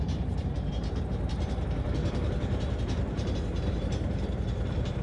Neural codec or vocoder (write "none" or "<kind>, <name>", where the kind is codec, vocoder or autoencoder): vocoder, BigVGAN v2